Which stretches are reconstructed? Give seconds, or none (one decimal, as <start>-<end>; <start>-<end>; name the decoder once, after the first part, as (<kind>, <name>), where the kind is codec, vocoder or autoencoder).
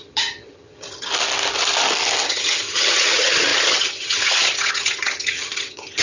0.0-1.1 (vocoder, HiFi-GAN); 2.2-6.0